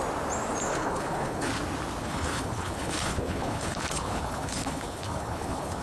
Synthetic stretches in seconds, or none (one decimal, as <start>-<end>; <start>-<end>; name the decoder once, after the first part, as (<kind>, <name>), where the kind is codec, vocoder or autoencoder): 0.7-1.5 (codec, HILCodec); 2.0-5.8